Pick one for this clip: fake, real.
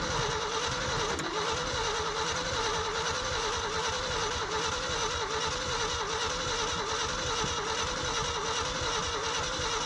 real